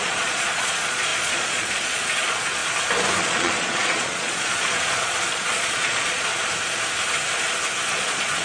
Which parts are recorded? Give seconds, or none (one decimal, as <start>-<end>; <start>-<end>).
2.6-3.2; 6.3-7.9